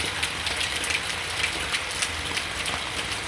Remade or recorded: recorded